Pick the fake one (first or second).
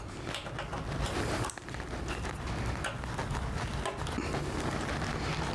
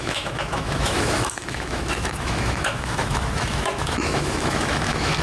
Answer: second